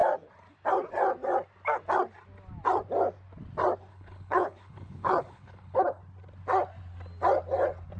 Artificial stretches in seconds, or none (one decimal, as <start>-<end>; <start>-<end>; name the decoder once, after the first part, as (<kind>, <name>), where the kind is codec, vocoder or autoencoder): 3.9-6.0 (codec, HILCodec)